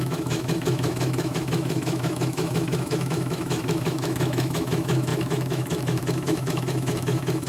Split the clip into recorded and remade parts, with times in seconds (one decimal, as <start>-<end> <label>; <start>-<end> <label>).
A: 0.0-7.5 remade